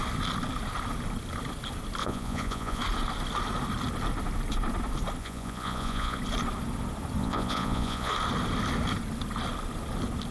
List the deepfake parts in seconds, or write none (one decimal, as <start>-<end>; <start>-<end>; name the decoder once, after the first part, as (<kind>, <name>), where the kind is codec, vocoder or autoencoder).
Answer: 2.0-2.8 (vocoder, Vocos); 5.2-6.2; 7.2-8.1